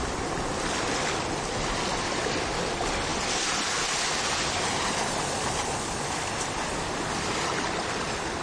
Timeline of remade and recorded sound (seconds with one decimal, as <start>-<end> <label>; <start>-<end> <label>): 0.0-8.4 recorded